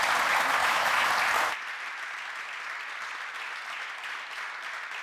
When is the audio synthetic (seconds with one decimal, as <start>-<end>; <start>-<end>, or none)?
0.6-1.1